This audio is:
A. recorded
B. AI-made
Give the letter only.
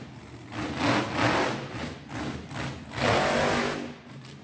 A